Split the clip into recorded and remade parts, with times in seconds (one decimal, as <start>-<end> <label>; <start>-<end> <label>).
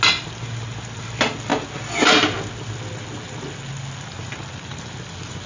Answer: 0.0-5.5 recorded